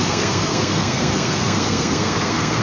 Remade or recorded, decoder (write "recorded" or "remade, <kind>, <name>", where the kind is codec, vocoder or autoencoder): remade, codec, SNAC